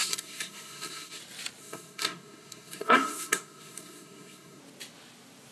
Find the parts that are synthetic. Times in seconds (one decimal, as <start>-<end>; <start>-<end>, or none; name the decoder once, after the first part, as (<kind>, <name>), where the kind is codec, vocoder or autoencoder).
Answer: 0.0-1.2 (codec, SNAC); 1.6-4.6